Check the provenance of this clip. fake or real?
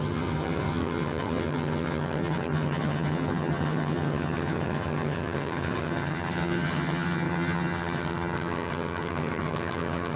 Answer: fake